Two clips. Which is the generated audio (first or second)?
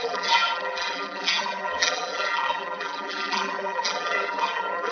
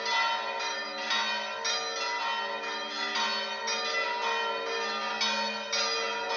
first